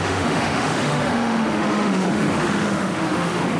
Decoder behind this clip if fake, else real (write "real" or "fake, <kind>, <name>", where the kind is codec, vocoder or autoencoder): fake, autoencoder, DAC-VAE